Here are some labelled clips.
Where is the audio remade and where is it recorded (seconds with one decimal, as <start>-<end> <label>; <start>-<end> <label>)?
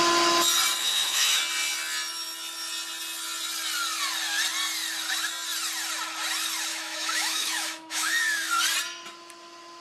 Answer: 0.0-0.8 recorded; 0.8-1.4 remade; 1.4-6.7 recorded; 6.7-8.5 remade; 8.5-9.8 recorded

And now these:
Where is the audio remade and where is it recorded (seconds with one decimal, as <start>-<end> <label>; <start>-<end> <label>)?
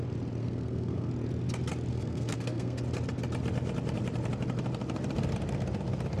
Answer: 0.0-0.4 recorded; 0.4-1.1 remade; 1.1-1.9 recorded; 1.9-2.8 remade; 2.8-6.2 recorded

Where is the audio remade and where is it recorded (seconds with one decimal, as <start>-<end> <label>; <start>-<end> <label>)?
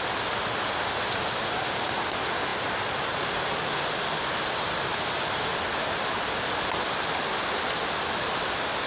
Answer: 0.0-8.9 recorded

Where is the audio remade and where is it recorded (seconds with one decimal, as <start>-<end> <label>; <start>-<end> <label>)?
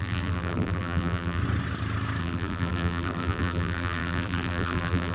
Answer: 0.0-1.4 remade; 1.4-2.2 recorded; 2.2-5.1 remade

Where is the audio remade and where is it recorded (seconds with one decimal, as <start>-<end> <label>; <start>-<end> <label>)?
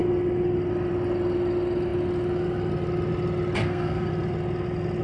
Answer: 0.0-3.6 recorded; 3.6-4.1 remade; 4.1-5.0 recorded